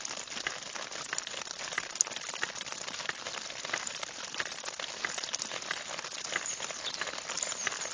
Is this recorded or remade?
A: recorded